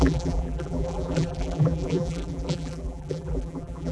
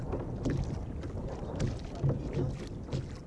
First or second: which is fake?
first